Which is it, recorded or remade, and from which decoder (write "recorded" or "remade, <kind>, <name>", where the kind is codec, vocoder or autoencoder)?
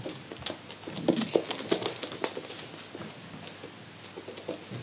recorded